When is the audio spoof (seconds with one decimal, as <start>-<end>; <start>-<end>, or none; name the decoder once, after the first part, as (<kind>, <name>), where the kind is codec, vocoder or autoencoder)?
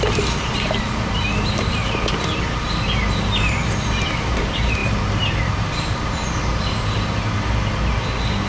0.0-8.5 (vocoder, BigVGAN v2)